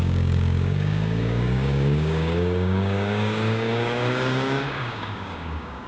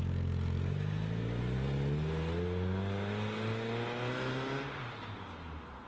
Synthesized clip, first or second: first